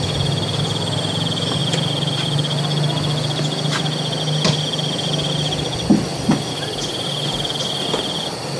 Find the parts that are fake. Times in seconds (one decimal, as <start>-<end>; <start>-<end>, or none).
none